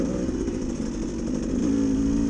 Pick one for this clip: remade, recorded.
recorded